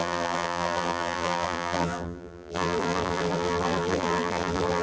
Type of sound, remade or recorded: remade